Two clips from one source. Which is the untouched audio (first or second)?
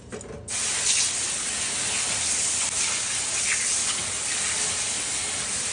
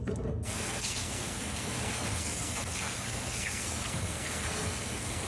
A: first